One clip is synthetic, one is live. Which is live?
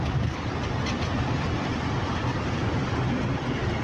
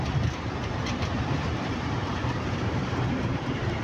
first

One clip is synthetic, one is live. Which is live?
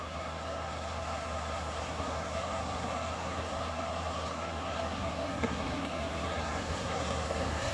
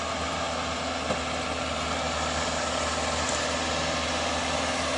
second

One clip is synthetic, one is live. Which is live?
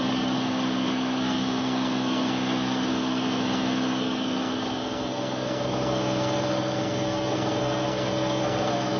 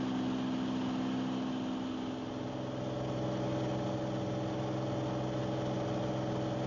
second